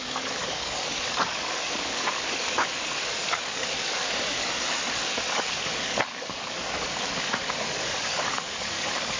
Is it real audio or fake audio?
fake